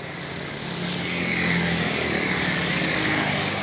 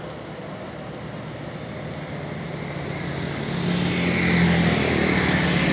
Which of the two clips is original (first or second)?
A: second